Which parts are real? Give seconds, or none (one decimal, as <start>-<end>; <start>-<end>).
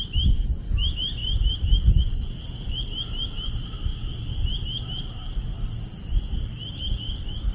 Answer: 0.0-1.2; 2.4-7.5